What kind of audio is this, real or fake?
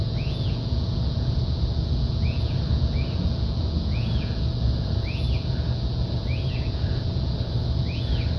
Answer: fake